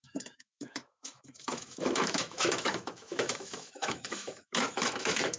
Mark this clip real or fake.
fake